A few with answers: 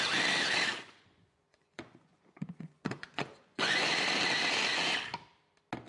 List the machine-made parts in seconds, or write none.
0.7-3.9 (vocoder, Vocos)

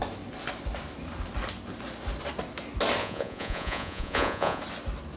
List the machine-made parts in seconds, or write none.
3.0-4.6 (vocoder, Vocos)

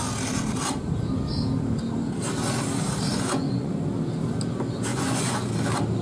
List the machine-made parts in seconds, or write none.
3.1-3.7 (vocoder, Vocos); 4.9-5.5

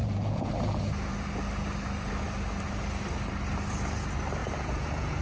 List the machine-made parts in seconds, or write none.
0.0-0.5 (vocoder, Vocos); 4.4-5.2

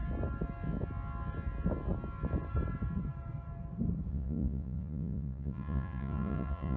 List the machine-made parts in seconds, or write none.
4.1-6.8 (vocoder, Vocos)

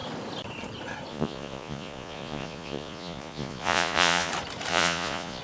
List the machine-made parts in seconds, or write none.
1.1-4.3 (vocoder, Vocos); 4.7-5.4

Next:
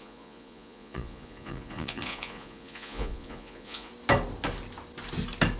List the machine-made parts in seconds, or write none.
0.0-3.9 (vocoder, Vocos)

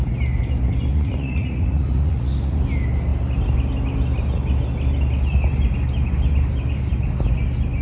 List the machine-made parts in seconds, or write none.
0.9-2.6 (vocoder, Vocos)